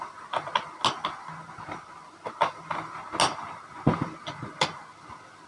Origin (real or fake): real